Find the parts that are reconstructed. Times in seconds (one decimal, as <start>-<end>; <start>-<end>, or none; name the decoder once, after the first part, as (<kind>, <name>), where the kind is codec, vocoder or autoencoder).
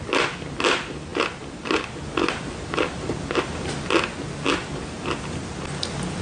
none